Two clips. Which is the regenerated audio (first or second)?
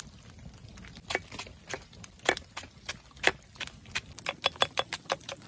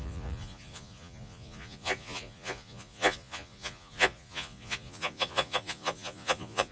second